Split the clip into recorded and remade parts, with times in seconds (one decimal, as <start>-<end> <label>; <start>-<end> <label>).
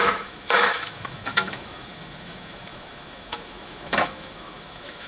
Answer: 0.0-5.1 remade